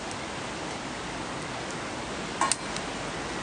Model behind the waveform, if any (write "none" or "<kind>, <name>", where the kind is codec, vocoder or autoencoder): none